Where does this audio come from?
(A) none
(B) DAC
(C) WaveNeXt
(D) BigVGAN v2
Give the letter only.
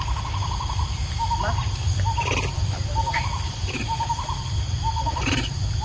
D